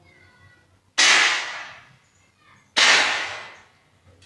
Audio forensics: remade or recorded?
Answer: recorded